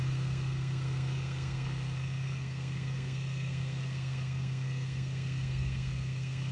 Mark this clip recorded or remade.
remade